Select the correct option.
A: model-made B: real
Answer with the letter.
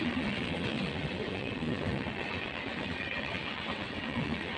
A